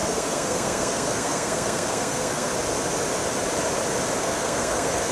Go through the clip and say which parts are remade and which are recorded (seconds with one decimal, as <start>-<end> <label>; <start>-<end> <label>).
0.0-2.5 remade; 2.5-4.2 recorded; 4.2-5.1 remade